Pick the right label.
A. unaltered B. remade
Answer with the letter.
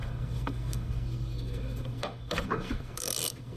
B